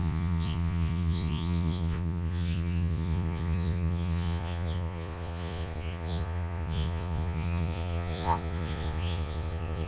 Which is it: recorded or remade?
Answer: remade